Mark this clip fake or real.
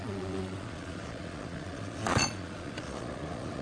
fake